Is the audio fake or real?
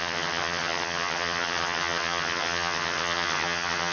fake